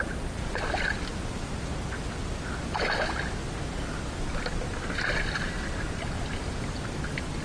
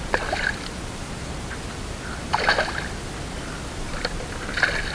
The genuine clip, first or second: first